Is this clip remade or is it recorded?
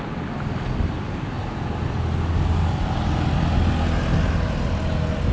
recorded